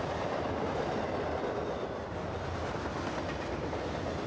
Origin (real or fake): real